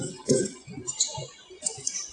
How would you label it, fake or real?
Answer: fake